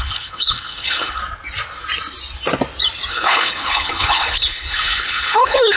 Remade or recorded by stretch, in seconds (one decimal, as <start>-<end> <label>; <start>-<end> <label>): 0.0-1.2 remade; 1.2-3.1 recorded; 3.1-5.8 remade